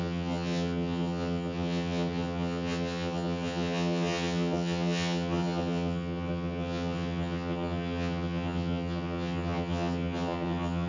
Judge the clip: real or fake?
fake